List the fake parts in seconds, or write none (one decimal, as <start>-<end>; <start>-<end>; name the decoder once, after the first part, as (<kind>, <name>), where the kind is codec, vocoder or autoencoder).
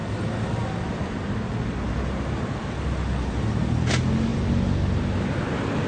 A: none